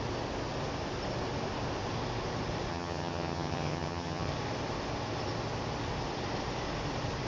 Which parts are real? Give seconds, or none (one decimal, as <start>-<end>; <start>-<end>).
0.0-2.7; 4.3-7.3